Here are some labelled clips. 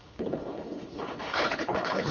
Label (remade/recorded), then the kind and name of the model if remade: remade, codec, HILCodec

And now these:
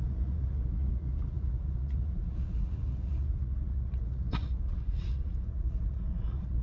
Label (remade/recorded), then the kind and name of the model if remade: remade, vocoder, Vocos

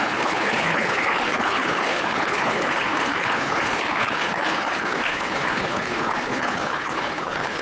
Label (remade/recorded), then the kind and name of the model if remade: remade, codec, HILCodec